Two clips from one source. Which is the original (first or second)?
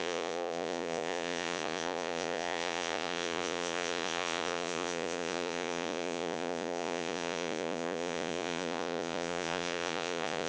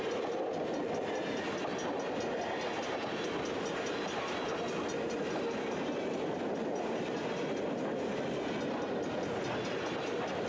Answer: second